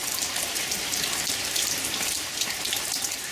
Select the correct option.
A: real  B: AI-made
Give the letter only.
B